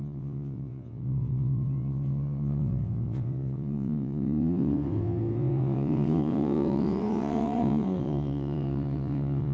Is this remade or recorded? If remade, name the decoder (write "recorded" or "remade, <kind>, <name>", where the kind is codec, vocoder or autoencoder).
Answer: remade, vocoder, WaveNeXt